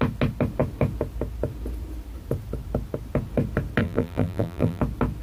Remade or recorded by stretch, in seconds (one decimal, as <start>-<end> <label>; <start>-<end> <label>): 0.0-3.8 recorded; 3.8-4.8 remade; 4.8-5.2 recorded